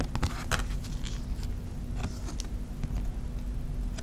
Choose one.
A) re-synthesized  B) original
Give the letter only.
B